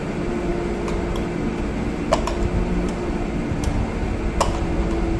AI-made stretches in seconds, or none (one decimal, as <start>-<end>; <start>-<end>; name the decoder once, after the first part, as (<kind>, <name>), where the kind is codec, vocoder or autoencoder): none